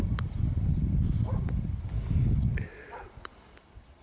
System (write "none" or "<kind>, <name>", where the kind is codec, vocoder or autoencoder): none